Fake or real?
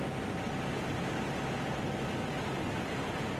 real